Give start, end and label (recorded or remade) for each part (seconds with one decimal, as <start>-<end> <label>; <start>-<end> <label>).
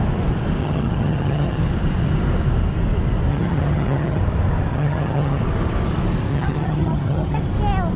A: 0.0-0.6 recorded; 0.6-1.6 remade; 1.6-3.3 recorded; 3.3-4.2 remade; 4.2-4.7 recorded; 4.7-5.4 remade; 5.4-6.3 recorded; 6.3-7.4 remade; 7.4-8.0 recorded